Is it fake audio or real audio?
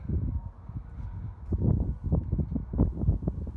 real